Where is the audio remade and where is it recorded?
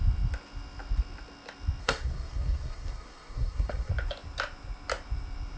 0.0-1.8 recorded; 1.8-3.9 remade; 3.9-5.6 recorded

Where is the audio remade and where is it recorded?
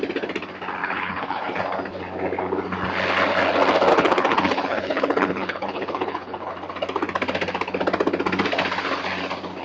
0.0-0.8 recorded; 0.8-1.6 remade; 1.6-3.9 recorded; 3.9-6.5 remade; 6.5-9.6 recorded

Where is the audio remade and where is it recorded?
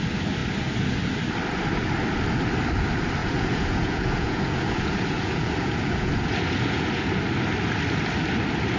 0.0-3.2 recorded; 3.2-7.1 remade; 7.1-8.8 recorded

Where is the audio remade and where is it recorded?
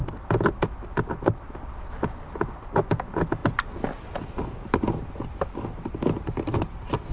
0.0-7.1 recorded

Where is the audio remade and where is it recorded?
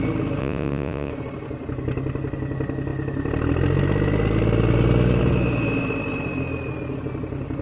0.0-0.4 recorded; 0.4-1.1 remade; 1.1-7.6 recorded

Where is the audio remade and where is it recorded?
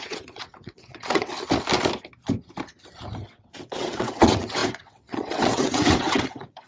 0.0-1.3 remade; 1.3-3.3 recorded; 3.3-6.7 remade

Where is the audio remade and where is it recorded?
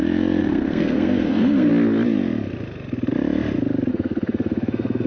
0.0-0.4 recorded; 0.4-1.7 remade; 1.7-3.9 recorded; 3.9-5.1 remade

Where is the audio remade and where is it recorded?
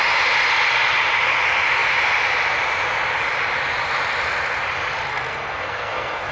0.0-5.1 recorded; 5.1-6.3 remade